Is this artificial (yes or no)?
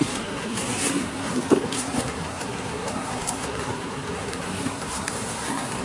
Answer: yes